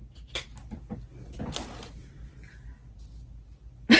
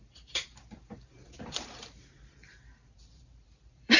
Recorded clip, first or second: first